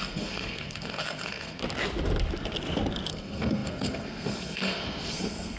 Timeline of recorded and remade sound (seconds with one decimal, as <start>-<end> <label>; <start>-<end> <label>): 0.0-1.6 remade; 1.6-3.1 recorded; 3.1-5.6 remade